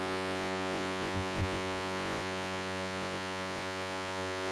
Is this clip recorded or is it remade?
remade